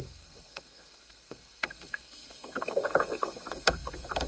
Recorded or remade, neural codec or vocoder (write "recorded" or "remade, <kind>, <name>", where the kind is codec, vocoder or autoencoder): remade, codec, SNAC